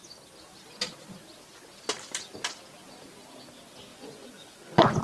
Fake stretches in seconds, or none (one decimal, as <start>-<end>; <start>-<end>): 3.9-5.0

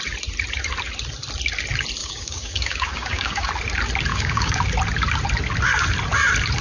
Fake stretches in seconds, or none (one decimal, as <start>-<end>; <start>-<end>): 2.0-3.5; 4.1-4.6

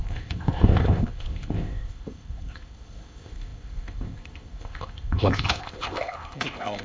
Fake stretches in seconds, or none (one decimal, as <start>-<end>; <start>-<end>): 0.0-6.8